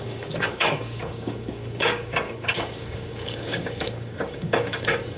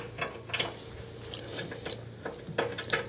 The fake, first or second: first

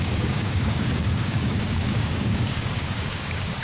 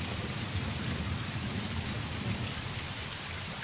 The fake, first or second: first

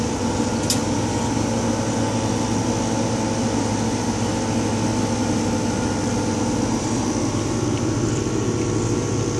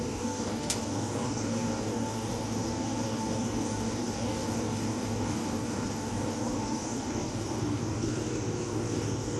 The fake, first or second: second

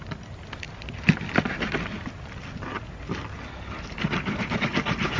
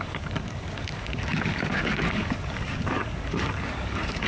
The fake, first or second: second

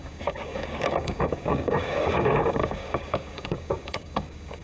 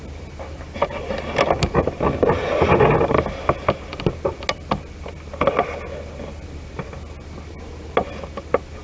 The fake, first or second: first